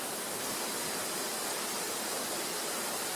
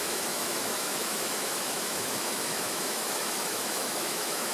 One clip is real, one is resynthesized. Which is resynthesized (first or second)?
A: second